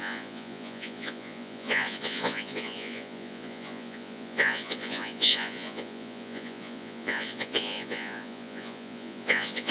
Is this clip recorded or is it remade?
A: remade